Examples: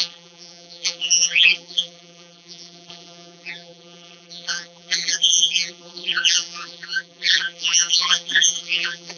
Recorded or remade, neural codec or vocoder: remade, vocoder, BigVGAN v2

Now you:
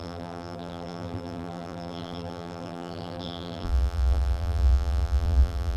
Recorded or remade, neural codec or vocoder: remade, vocoder, BigVGAN v2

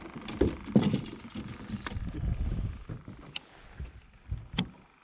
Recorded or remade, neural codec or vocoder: remade, vocoder, BigVGAN v2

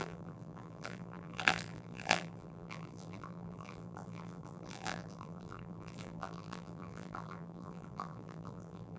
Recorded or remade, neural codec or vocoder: remade, vocoder, BigVGAN v2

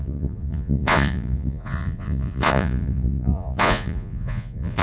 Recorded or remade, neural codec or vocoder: remade, vocoder, Vocos